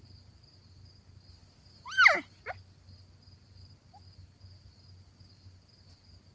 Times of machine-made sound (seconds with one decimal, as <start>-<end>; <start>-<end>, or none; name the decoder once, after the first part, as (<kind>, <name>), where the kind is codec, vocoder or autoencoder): none